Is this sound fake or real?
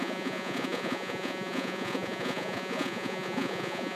fake